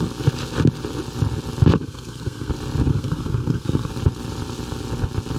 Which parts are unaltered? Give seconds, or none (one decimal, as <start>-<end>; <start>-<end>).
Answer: 0.0-1.7; 2.5-2.9; 3.9-5.4